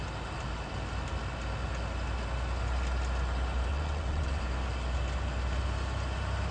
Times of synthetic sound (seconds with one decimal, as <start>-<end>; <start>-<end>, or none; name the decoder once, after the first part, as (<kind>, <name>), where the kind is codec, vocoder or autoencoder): 3.7-4.4 (vocoder, WaveNeXt)